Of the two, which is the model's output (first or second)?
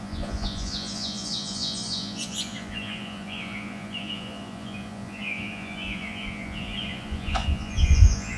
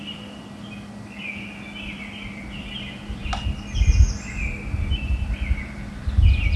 first